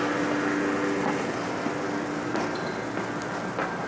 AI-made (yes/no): no